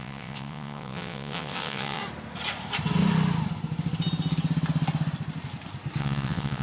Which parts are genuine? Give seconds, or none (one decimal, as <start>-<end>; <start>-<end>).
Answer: 2.0-6.0